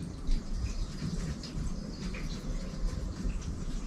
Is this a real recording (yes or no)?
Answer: no